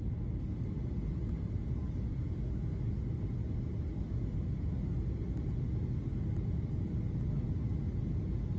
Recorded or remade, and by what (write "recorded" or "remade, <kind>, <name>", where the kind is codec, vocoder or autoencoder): recorded